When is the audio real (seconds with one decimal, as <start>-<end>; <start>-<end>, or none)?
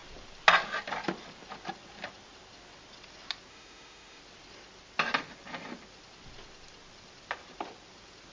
0.0-3.5; 4.2-8.3